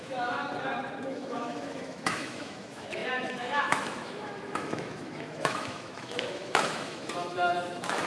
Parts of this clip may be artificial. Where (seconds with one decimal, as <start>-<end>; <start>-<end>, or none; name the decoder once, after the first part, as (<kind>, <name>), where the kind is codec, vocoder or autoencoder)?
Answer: 0.0-0.4 (autoencoder, DAC-VAE); 1.0-8.1